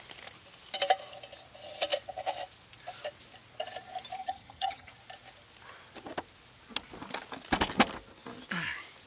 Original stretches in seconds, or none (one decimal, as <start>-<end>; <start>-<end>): 0.0-4.2; 4.9-9.1

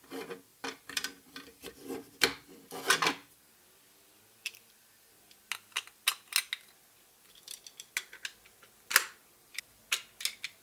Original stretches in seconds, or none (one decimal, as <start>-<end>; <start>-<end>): 0.0-0.5; 1.7-3.2; 5.5-9.2; 9.8-10.6